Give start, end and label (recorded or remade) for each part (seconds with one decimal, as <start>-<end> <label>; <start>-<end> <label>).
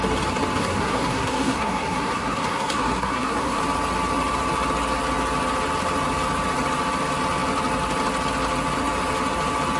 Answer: 0.0-0.6 recorded; 0.6-3.6 remade; 3.6-9.8 recorded